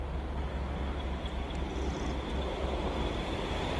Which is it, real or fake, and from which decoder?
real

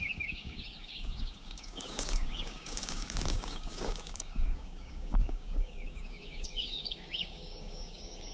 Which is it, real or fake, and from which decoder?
fake, codec, DAC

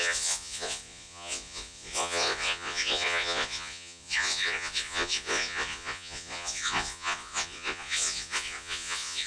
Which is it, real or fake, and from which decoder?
fake, vocoder, Vocos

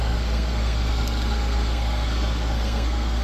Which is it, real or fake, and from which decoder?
fake, codec, SNAC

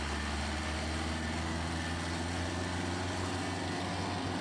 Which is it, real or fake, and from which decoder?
real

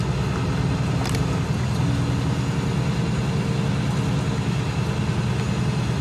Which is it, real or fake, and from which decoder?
real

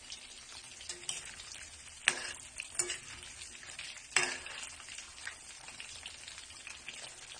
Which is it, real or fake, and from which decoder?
real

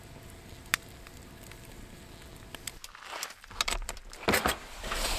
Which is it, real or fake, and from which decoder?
real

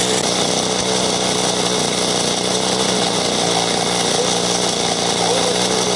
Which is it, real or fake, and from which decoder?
real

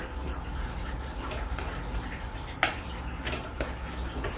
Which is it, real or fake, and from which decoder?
real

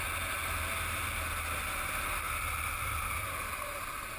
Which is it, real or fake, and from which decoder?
real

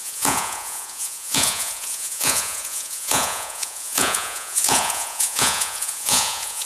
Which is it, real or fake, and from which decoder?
fake, vocoder, Vocos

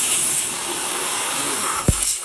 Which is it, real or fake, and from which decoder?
fake, codec, DAC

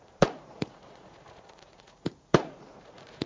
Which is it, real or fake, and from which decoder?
fake, vocoder, Vocos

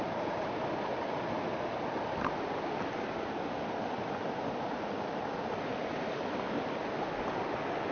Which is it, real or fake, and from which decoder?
real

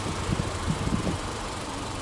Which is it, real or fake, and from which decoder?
fake, vocoder, BigVGAN v2